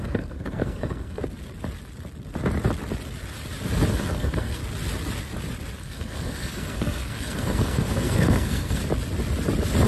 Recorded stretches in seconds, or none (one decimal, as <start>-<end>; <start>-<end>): 1.2-3.9; 4.6-5.8; 8.8-9.9